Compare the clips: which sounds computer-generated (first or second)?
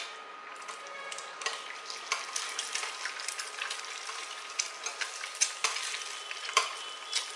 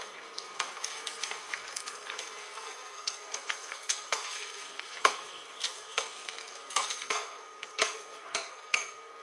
second